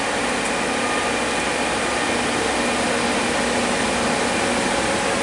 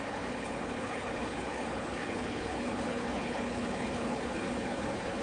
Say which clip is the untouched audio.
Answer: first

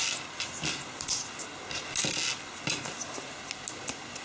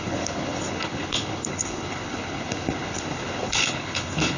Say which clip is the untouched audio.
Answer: first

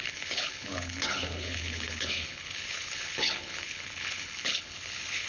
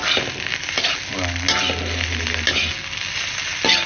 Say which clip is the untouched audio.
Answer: second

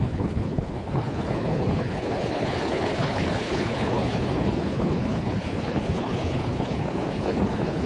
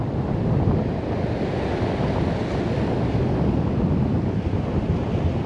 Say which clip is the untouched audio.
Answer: second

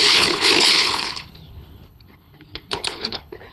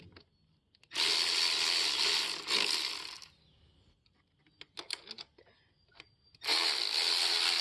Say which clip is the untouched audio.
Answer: second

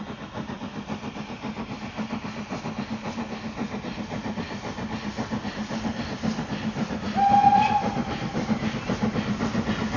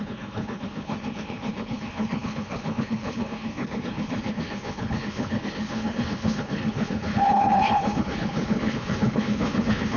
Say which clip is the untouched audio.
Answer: first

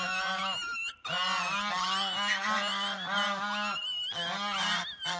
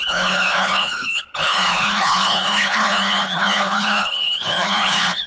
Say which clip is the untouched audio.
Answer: first